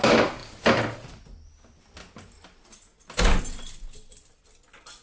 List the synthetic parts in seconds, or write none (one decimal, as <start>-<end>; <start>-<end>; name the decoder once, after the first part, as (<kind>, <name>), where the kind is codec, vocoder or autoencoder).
none